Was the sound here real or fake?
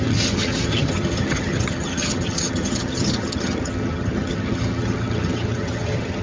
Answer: fake